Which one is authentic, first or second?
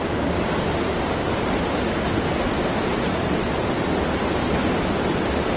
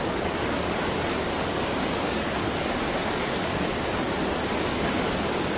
first